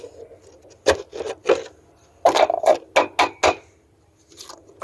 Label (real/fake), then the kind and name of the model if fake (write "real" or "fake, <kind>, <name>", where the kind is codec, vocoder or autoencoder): real